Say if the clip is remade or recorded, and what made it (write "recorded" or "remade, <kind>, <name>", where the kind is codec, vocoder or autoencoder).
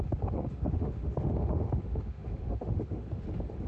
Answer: remade, autoencoder, DAC-VAE